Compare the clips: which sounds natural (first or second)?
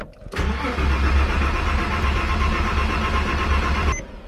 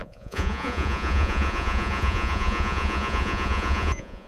first